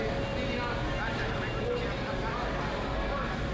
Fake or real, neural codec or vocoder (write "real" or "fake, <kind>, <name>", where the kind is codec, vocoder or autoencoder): real